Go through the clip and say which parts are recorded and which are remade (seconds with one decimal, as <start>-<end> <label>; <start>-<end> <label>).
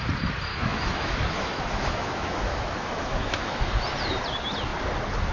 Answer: 0.0-0.5 recorded; 0.5-3.7 remade; 3.7-5.3 recorded